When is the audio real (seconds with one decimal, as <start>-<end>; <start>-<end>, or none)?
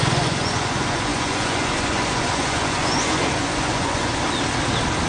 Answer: 4.1-5.1